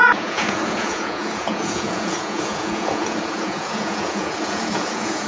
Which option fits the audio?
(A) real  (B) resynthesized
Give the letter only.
B